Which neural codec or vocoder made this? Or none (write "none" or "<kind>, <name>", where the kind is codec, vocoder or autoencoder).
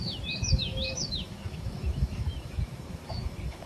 autoencoder, DAC-VAE